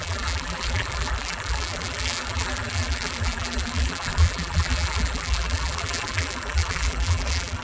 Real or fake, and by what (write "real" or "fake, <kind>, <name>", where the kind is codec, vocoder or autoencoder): fake, vocoder, BigVGAN v2